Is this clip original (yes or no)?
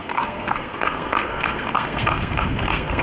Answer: no